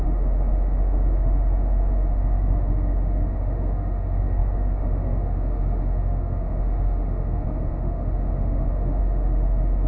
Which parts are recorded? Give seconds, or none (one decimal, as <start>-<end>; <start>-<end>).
none